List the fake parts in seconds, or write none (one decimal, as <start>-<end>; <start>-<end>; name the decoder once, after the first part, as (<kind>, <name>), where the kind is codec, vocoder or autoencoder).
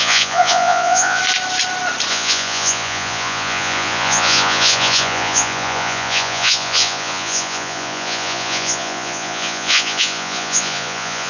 0.0-1.2 (vocoder, Vocos); 2.1-11.3